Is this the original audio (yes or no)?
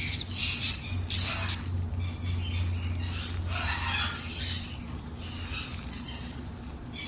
yes